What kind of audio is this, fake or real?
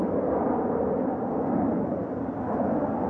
real